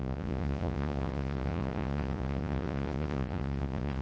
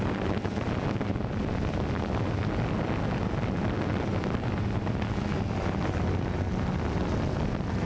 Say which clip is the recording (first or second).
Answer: second